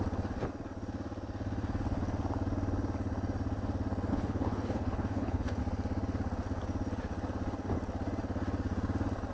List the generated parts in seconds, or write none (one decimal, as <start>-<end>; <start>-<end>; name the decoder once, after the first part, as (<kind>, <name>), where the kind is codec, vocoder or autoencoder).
4.1-5.6 (codec, HILCodec)